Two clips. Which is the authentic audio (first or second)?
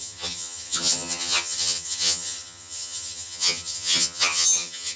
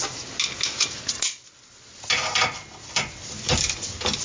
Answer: second